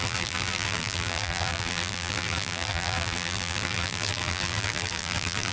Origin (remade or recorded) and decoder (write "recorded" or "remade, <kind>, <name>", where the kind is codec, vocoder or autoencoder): remade, vocoder, BigVGAN v2